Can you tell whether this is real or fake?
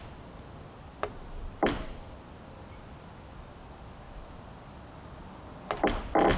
real